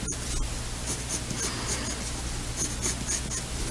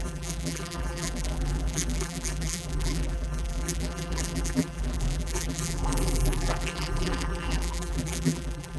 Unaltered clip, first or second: first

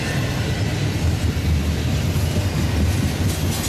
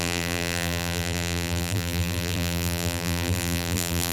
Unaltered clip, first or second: first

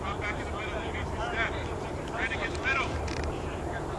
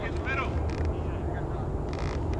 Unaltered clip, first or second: second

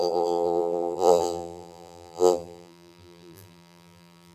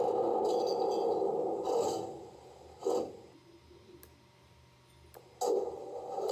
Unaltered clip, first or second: second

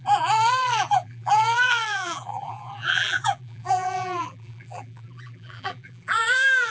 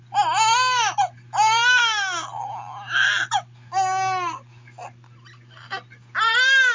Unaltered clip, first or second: second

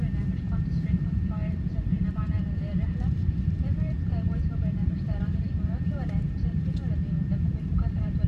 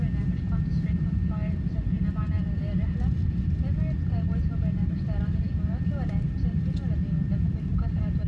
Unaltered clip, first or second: second